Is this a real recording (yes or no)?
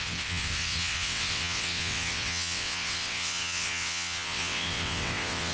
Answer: no